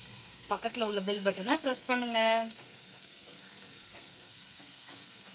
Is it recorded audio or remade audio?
remade